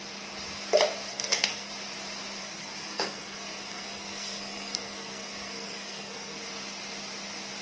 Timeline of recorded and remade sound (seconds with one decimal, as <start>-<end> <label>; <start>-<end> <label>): 0.0-1.1 recorded; 1.1-1.7 remade; 1.7-2.4 recorded; 2.4-6.4 remade; 6.4-7.6 recorded